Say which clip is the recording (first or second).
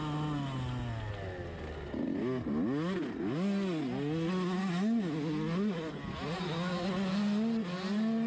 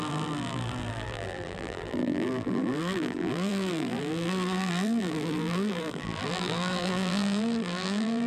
first